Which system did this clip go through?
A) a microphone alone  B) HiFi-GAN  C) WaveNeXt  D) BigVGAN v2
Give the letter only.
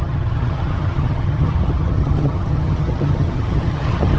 B